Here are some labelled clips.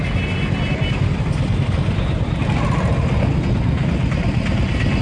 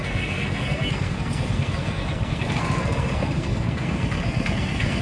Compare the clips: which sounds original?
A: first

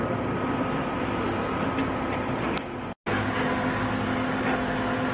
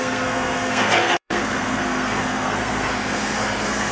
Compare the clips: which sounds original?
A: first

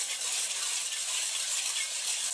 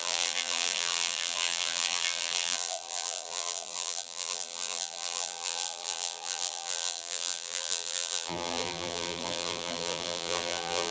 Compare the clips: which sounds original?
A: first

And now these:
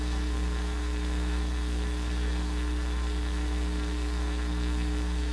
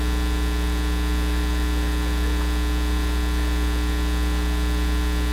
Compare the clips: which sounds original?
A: second